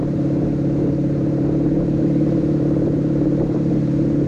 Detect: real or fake fake